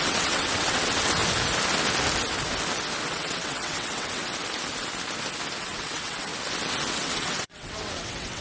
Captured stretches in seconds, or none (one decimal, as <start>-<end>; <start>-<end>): 1.2-3.1; 4.2-5.6; 6.3-6.9